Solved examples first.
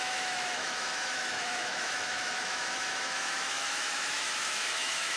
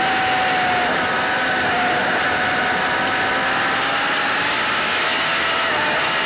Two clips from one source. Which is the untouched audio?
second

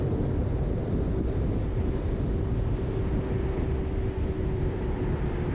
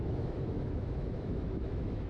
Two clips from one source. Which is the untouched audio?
first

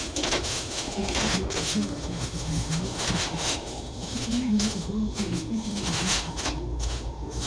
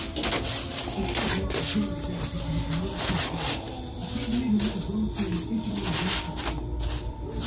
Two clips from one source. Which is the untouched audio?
second